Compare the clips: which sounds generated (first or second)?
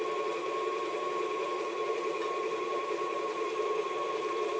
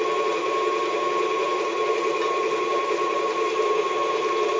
first